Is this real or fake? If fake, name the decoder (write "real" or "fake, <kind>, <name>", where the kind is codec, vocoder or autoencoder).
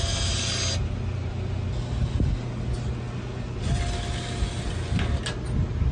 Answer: real